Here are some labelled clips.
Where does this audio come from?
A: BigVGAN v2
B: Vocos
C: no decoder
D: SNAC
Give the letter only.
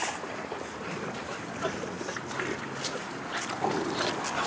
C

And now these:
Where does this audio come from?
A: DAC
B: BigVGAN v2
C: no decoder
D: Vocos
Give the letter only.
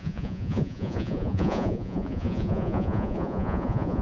D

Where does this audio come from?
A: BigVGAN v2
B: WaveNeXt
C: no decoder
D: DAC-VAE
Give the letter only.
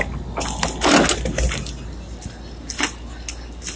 C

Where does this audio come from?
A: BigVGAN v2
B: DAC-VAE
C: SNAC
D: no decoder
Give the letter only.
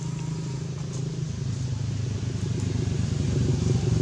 D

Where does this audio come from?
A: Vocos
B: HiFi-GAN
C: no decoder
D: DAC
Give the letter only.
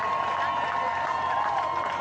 C